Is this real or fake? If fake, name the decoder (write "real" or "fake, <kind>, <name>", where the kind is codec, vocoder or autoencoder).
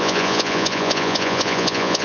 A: fake, vocoder, Vocos